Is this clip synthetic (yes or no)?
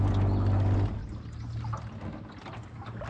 no